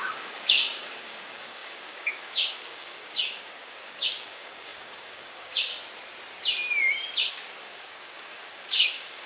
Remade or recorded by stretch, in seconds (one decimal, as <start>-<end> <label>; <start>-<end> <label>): 0.0-5.7 remade; 5.7-7.3 recorded; 7.3-9.3 remade